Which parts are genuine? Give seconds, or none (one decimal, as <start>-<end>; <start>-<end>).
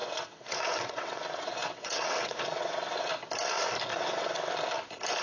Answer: 3.1-3.9; 4.5-5.2